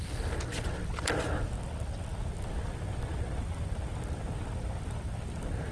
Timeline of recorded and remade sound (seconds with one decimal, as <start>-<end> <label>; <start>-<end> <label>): 0.0-5.7 recorded